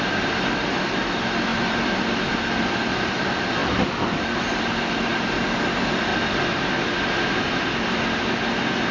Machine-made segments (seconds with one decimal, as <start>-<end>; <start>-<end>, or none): 1.5-2.2; 3.6-4.2; 5.1-5.6; 6.1-6.9